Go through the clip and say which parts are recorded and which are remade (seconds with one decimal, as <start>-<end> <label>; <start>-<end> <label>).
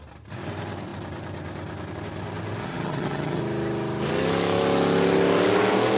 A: 0.0-2.6 recorded; 2.6-3.4 remade; 3.4-6.0 recorded